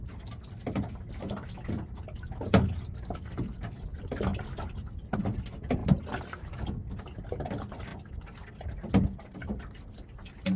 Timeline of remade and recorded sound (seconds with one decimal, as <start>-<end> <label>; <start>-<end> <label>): 0.0-4.3 recorded; 4.3-4.9 remade; 4.9-10.6 recorded